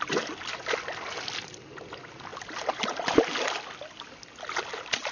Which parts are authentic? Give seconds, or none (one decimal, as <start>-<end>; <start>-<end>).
0.0-5.1